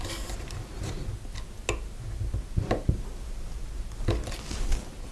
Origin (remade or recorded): recorded